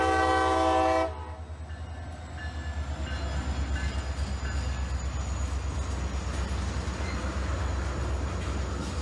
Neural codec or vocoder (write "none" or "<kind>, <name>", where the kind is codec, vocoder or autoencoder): none